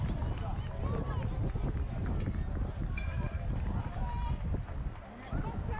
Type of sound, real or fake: real